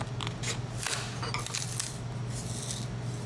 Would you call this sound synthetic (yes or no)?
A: no